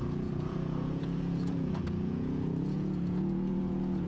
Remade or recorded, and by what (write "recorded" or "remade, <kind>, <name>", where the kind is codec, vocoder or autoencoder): remade, vocoder, Vocos